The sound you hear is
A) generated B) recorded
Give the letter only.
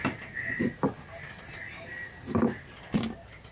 B